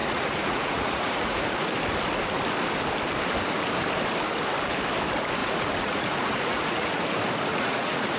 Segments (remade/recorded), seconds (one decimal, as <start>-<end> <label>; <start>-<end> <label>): 0.0-1.7 remade; 1.7-5.4 recorded; 5.4-7.0 remade; 7.0-7.5 recorded; 7.5-8.2 remade